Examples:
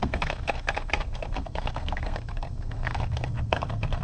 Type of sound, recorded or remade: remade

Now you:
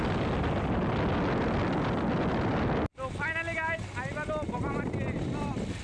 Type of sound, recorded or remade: recorded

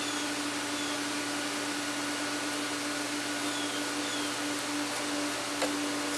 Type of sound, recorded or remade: recorded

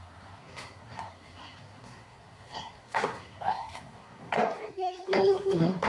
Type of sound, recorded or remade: remade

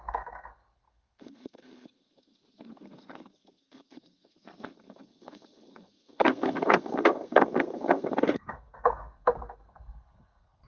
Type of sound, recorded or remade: remade